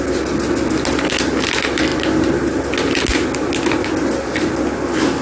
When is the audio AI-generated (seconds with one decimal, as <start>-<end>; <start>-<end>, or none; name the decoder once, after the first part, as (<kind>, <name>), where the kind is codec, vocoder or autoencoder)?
none